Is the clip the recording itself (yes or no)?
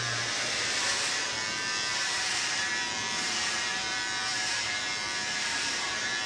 no